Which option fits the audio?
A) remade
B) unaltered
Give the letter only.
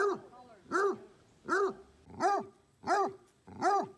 B